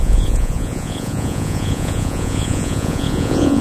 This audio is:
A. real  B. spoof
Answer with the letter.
B